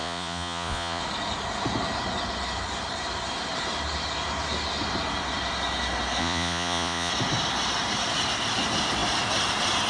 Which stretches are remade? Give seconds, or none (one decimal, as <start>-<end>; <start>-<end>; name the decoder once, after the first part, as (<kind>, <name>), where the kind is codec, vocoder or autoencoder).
0.0-1.0 (vocoder, Vocos); 6.2-7.1